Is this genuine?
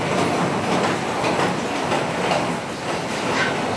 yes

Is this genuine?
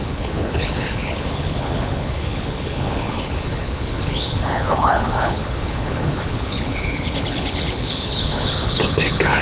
no